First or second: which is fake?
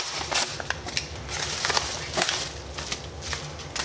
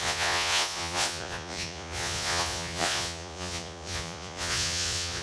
second